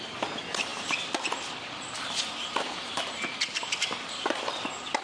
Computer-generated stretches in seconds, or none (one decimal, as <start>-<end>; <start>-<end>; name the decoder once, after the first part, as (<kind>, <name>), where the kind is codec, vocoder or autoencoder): none